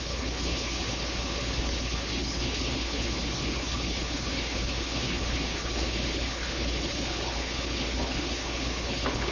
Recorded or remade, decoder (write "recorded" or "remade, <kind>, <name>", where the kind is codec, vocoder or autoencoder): remade, codec, HILCodec